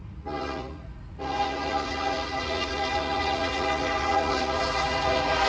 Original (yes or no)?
no